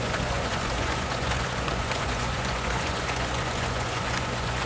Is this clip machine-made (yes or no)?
yes